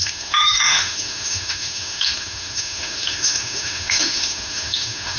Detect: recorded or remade remade